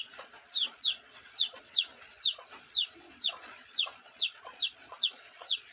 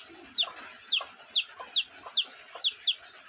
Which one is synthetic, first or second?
first